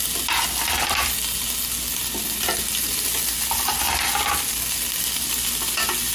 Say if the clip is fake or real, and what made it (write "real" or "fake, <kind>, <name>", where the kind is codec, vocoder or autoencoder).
real